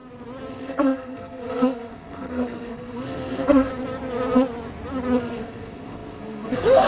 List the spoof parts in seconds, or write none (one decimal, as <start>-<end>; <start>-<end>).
0.5-3.7; 5.2-6.9